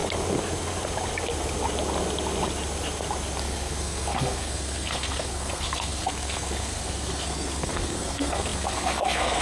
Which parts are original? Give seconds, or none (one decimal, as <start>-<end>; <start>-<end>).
0.0-3.4